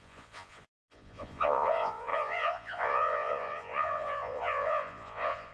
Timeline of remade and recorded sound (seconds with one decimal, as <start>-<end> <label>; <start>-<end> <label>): 0.0-5.5 remade